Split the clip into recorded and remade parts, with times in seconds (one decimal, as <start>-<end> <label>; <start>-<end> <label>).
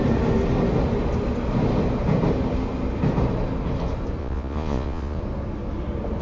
0.0-4.2 recorded; 4.2-5.2 remade; 5.2-6.2 recorded